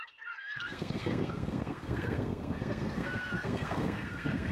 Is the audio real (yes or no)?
no